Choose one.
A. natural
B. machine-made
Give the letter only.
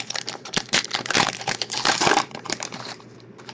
B